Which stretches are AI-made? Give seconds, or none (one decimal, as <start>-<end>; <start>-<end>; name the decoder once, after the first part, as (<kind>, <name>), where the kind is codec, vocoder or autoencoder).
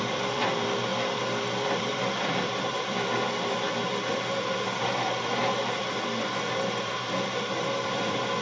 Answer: 0.0-8.4 (vocoder, BigVGAN v2)